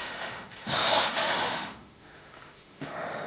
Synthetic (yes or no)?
yes